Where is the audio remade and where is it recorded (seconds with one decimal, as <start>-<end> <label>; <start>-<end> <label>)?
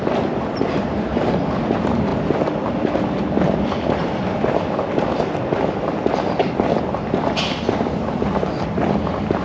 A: 0.0-9.4 recorded